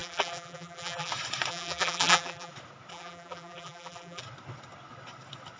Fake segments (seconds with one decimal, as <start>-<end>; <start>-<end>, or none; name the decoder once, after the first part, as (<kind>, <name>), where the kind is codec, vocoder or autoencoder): 0.0-1.1 (vocoder, BigVGAN v2); 1.5-2.5; 2.9-4.2